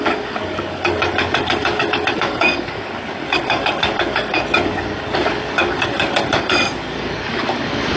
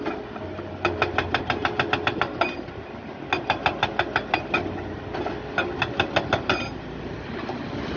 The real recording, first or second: second